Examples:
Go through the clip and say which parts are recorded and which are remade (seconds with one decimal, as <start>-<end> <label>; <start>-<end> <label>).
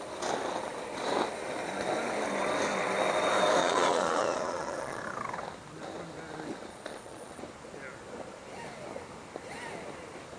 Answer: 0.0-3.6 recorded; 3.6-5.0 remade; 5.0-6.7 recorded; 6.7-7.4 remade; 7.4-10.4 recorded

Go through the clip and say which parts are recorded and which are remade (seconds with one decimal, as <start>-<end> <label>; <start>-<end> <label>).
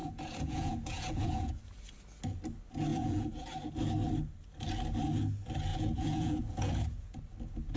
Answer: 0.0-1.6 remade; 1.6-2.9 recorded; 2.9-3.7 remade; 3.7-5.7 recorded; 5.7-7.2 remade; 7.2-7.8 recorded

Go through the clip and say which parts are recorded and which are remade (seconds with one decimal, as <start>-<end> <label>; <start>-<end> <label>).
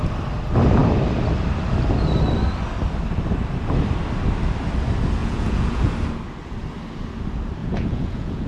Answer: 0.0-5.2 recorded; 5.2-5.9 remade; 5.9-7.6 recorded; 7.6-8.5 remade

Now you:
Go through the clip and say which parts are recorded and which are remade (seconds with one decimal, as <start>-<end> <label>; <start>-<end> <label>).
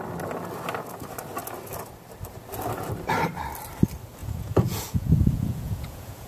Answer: 0.0-4.2 recorded; 4.2-6.3 remade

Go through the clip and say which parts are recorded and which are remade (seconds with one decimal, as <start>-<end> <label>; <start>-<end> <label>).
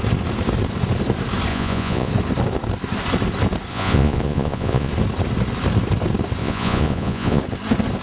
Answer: 0.0-1.5 recorded; 1.5-2.1 remade; 2.1-3.7 recorded; 3.7-4.9 remade; 4.9-6.4 recorded; 6.4-7.4 remade; 7.4-8.0 recorded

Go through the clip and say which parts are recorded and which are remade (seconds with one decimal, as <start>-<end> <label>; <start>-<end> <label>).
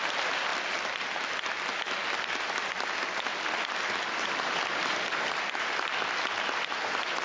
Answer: 0.0-7.2 recorded